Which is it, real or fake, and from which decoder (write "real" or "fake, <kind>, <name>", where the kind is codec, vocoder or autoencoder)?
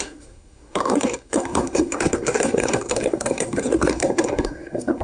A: fake, codec, SNAC